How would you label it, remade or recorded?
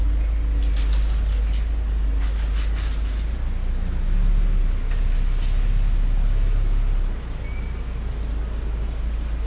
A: recorded